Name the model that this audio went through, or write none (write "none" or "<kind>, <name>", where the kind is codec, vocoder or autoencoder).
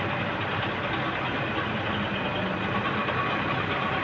none